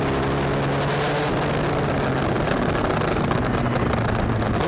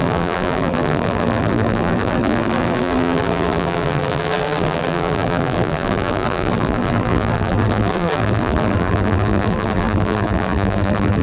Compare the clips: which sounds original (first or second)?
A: first